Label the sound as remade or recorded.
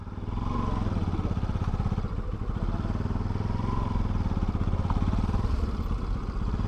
recorded